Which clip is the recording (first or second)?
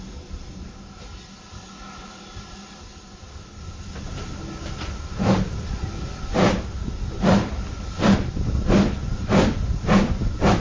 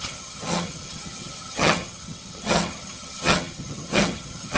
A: first